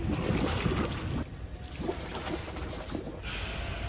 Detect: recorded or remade recorded